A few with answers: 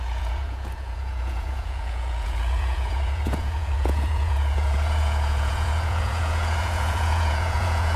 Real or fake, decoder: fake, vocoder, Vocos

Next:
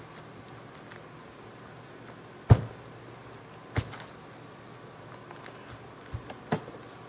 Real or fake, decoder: real